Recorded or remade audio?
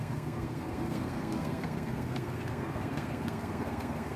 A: remade